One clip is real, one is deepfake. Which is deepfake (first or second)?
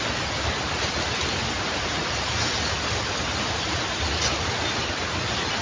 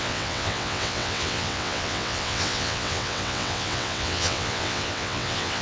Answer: second